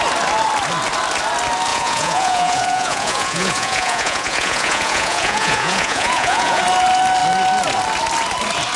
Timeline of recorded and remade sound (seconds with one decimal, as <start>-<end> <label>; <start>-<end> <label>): 0.0-1.7 recorded; 1.7-6.6 remade; 6.6-8.8 recorded